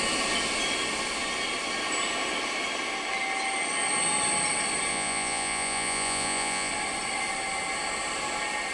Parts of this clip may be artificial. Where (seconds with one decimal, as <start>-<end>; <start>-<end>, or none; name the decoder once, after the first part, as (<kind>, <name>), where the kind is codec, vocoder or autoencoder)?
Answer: 4.9-6.7 (vocoder, Vocos)